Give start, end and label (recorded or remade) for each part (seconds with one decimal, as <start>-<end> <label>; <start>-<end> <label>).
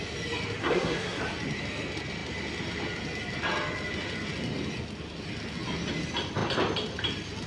0.0-0.6 recorded; 0.6-1.2 remade; 1.2-7.5 recorded